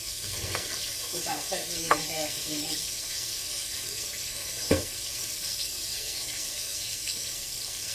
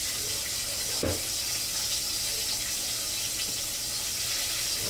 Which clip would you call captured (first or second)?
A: second